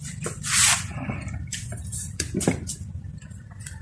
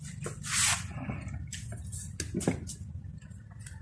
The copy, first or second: first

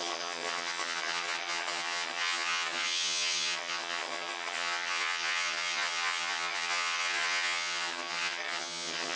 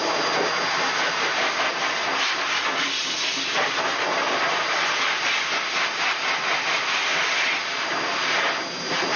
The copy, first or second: first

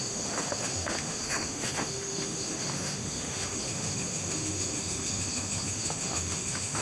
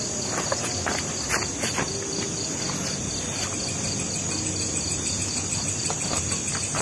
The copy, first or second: first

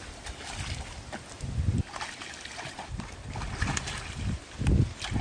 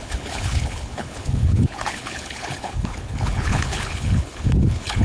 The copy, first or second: second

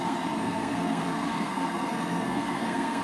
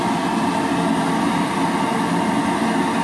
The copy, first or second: first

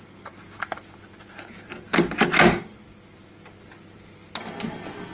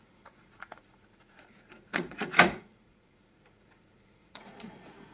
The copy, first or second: second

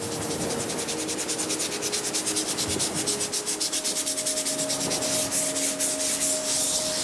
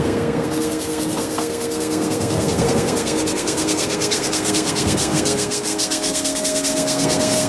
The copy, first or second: second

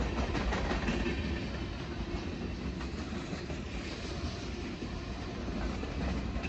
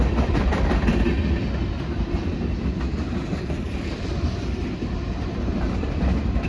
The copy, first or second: second